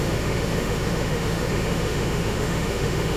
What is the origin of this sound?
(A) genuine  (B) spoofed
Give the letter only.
B